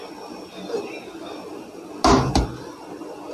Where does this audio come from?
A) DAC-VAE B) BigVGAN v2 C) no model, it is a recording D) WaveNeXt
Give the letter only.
C